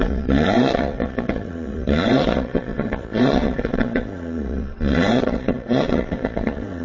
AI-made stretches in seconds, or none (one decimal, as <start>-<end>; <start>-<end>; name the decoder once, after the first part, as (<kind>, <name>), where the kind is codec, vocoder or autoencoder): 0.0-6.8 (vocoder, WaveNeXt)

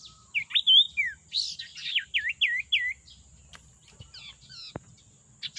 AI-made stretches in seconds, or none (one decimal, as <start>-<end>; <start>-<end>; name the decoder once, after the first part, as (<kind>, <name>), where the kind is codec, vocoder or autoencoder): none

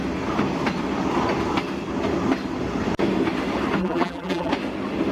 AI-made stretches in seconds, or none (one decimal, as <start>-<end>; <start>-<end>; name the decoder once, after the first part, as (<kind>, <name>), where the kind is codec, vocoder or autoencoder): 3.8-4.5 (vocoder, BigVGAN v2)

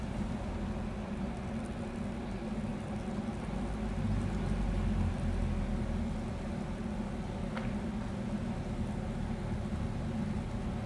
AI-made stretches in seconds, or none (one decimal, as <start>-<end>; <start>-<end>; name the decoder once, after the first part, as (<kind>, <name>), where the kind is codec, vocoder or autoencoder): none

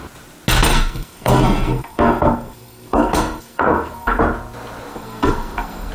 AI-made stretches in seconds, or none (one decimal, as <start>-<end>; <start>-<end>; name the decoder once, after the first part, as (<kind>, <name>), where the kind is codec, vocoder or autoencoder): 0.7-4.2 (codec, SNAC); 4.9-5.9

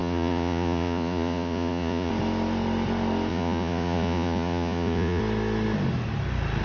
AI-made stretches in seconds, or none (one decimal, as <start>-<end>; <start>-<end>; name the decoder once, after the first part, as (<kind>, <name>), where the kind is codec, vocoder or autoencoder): 0.0-2.1 (vocoder, Vocos); 3.3-5.2